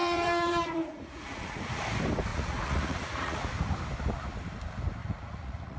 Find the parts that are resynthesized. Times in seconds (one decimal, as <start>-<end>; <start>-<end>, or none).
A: 0.0-1.8; 2.3-3.5; 5.0-5.8